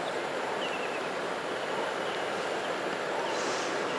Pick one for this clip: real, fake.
real